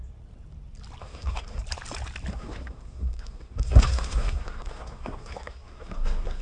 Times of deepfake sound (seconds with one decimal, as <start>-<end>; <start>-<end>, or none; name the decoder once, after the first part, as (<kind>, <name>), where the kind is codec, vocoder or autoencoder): 1.0-1.6 (codec, SNAC); 2.3-6.4